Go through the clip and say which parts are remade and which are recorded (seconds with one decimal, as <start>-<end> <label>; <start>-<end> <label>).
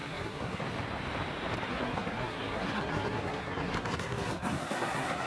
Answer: 0.0-0.6 remade; 0.6-1.7 recorded; 1.7-5.3 remade